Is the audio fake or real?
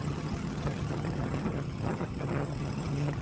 fake